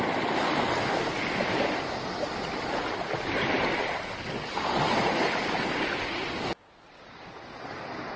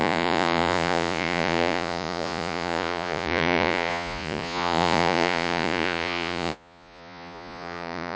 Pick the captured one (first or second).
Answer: first